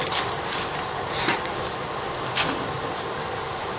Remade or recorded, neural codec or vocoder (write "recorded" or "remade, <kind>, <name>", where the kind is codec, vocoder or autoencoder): recorded